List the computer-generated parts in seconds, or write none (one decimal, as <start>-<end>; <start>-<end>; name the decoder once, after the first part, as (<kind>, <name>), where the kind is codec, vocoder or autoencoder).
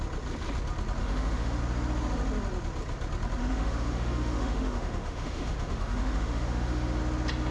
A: 1.0-1.6 (autoencoder, DAC-VAE); 3.4-7.0